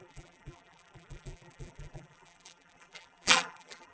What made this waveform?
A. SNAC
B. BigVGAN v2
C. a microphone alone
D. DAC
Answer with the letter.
B